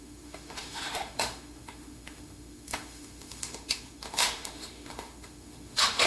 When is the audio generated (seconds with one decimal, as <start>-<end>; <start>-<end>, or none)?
0.0-6.1